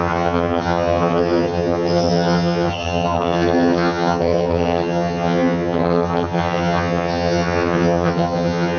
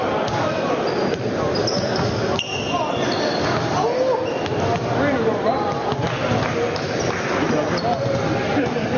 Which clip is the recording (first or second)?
second